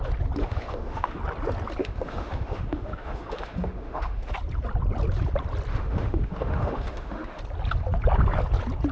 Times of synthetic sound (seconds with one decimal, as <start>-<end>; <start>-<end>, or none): 0.4-1.2; 1.8-4.3; 5.7-7.4